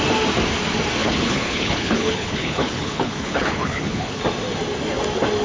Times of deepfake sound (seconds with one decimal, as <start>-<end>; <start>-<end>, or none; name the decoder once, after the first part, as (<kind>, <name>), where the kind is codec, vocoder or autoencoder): 1.0-4.2 (codec, HILCodec)